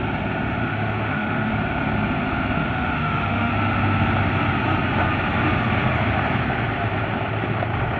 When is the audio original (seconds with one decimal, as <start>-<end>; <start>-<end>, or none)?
0.0-0.6; 1.5-2.6; 3.5-8.0